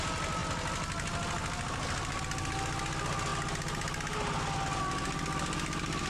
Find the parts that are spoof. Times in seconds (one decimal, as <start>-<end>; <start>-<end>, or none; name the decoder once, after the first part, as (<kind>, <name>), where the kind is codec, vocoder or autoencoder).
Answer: none